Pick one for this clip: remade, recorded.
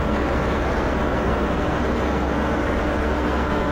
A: remade